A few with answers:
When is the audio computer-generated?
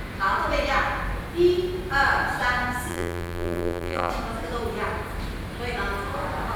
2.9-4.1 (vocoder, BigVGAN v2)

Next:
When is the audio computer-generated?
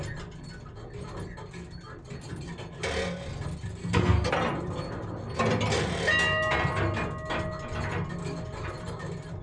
3.8-4.3 (codec, SNAC)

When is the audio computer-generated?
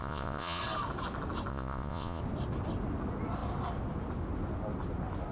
0.0-0.6 (vocoder, Vocos); 1.5-2.2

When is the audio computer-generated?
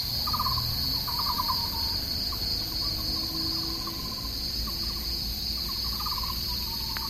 none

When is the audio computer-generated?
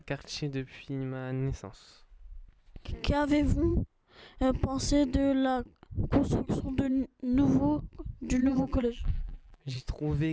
8.4-9.8 (vocoder, BigVGAN v2)